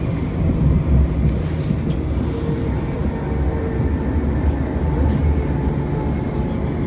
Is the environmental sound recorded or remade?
recorded